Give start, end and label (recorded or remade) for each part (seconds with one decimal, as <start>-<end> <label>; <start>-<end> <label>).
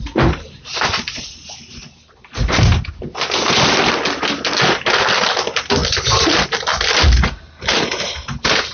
0.0-8.7 recorded